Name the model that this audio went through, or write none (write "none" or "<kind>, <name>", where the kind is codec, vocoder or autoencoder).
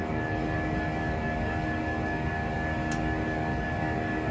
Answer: codec, DAC